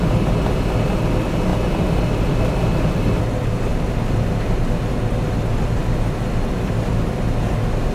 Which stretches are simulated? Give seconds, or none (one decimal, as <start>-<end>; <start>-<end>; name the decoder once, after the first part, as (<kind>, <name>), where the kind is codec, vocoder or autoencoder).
none

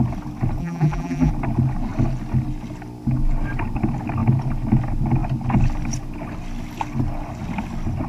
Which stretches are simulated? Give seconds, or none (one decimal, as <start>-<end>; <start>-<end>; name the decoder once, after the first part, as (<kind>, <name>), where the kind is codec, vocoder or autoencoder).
0.6-1.3 (vocoder, BigVGAN v2)

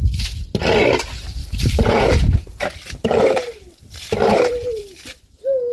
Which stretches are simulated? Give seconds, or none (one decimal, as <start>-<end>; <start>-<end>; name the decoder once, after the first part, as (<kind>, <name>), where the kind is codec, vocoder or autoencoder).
1.4-4.8 (vocoder, BigVGAN v2)

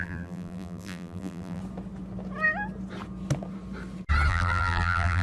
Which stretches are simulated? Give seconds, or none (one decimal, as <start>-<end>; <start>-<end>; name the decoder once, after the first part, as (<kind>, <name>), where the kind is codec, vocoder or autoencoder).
0.0-1.6 (vocoder, BigVGAN v2); 4.3-5.2

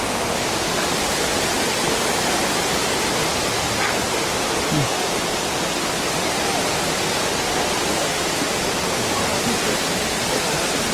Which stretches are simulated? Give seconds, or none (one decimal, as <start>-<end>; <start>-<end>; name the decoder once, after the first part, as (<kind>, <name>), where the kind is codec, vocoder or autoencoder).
2.4-3.3 (vocoder, BigVGAN v2)

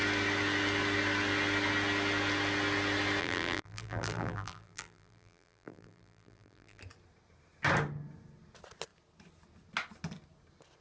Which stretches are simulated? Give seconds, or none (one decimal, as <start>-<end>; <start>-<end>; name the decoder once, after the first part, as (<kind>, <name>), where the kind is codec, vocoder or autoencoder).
3.2-6.8 (vocoder, BigVGAN v2)

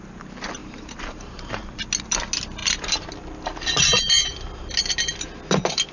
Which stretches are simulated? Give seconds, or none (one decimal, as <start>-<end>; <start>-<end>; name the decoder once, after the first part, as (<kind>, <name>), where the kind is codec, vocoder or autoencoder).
0.6-1.6 (vocoder, BigVGAN v2); 2.6-3.1